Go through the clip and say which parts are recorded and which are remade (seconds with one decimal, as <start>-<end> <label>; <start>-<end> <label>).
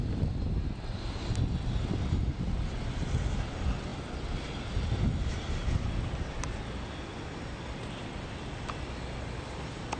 0.0-10.0 recorded